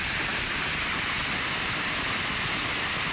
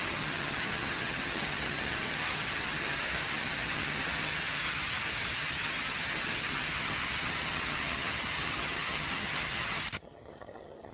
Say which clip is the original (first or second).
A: first